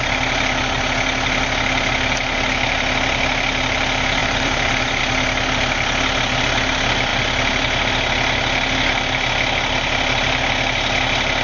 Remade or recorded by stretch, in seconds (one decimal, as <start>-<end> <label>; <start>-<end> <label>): 0.0-4.2 recorded; 4.2-5.0 remade; 5.0-11.4 recorded